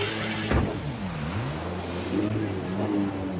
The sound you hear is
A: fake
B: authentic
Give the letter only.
B